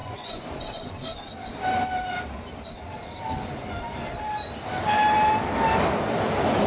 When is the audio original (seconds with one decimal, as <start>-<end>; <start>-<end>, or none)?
0.9-6.7